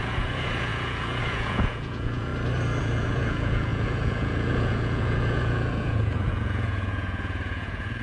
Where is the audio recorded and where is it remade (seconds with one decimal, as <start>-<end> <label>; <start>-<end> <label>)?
0.0-2.3 remade; 2.3-2.8 recorded; 2.8-8.0 remade

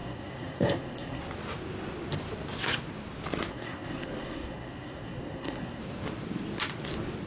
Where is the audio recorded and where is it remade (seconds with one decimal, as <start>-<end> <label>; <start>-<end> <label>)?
0.0-1.2 remade; 1.2-3.5 recorded; 3.5-5.8 remade; 5.8-7.3 recorded

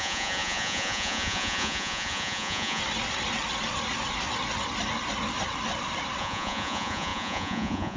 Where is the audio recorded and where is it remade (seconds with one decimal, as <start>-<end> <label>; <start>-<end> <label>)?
0.0-2.8 remade; 2.8-6.2 recorded; 6.2-8.0 remade